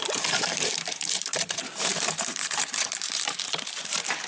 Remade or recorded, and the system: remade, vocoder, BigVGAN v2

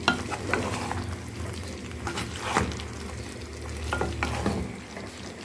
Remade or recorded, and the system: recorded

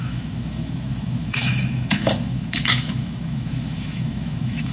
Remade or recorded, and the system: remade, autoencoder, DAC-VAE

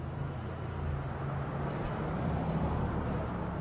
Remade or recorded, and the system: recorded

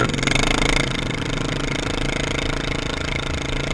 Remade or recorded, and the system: recorded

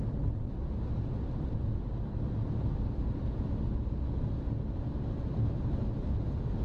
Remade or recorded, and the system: recorded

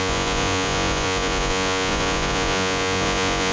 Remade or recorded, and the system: remade, vocoder, Vocos